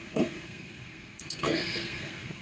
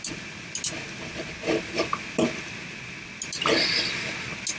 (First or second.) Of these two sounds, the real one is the second